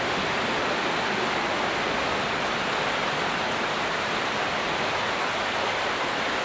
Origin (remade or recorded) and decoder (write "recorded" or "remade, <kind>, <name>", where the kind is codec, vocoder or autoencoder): recorded